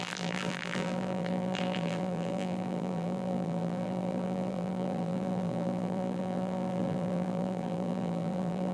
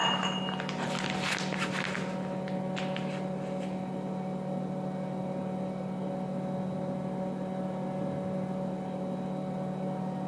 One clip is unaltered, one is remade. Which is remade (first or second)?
first